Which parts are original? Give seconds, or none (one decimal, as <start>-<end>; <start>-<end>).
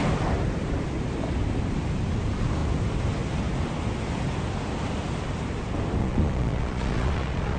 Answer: 0.0-6.0